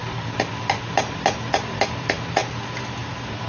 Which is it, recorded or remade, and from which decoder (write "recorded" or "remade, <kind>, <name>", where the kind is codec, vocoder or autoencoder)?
recorded